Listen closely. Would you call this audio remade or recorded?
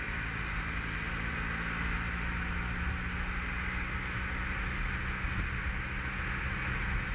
recorded